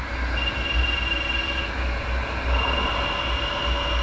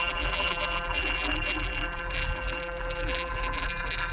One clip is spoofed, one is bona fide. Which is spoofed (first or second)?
second